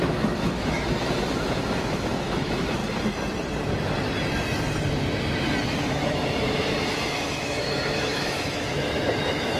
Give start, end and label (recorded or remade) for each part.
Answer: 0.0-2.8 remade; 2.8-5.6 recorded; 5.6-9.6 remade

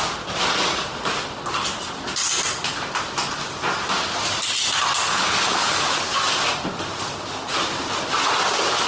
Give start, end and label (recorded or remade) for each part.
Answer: 0.0-5.1 recorded; 5.1-6.0 remade; 6.0-8.9 recorded

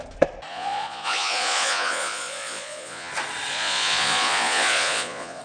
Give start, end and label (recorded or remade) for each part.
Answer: 0.0-0.5 recorded; 0.5-3.1 remade; 3.1-3.5 recorded; 3.5-5.4 remade

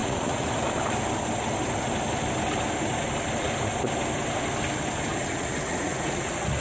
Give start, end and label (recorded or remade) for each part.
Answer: 0.0-0.5 remade; 0.5-5.1 recorded; 5.1-6.6 remade